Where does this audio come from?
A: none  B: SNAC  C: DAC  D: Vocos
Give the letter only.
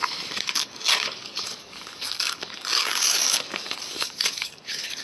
C